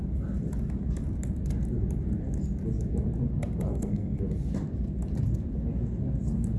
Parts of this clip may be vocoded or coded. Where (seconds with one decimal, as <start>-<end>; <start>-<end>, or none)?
3.7-4.2